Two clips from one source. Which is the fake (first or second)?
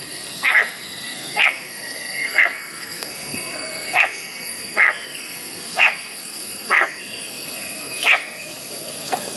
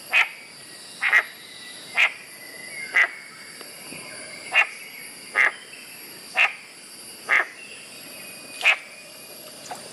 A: first